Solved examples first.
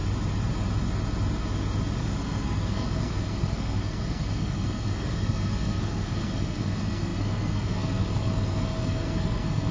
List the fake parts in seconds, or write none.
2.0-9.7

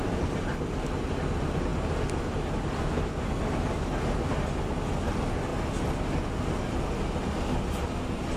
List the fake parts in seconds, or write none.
none

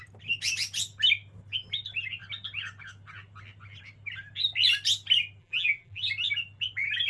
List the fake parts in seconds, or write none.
5.4-6.0

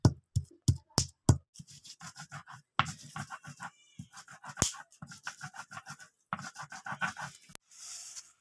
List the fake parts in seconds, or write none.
none

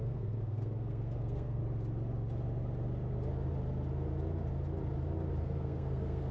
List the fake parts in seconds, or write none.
0.0-1.6; 5.4-6.3

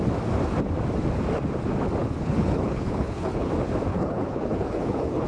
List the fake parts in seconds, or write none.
2.0-3.5; 3.9-5.3

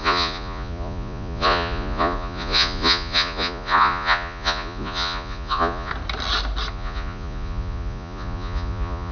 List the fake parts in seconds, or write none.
0.0-5.9; 6.7-9.1